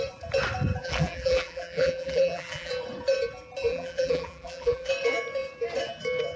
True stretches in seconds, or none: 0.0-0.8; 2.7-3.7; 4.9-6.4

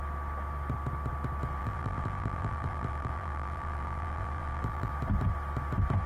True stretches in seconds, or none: 0.0-1.6; 4.9-6.1

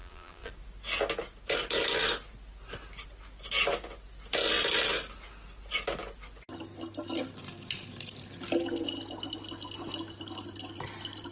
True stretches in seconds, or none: 0.5-11.3

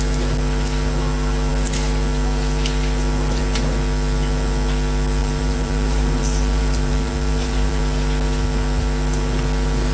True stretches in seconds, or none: 0.0-5.2; 7.8-9.9

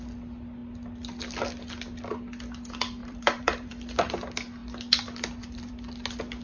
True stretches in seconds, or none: 0.0-3.0; 3.7-6.4